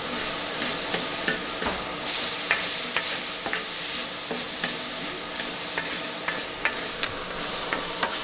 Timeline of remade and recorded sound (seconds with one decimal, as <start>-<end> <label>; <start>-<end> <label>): 0.0-8.2 recorded